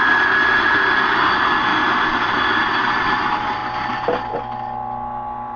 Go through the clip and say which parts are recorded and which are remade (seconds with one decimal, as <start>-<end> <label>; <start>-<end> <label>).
0.0-1.7 recorded; 1.7-2.3 remade; 2.3-5.6 recorded